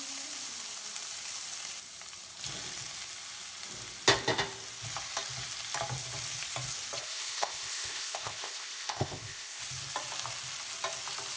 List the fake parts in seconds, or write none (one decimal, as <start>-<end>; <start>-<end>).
7.0-9.6